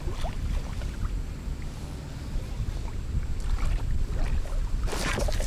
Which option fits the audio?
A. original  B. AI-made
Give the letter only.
A